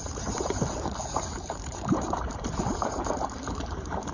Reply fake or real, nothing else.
fake